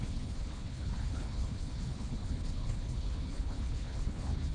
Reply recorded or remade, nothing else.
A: remade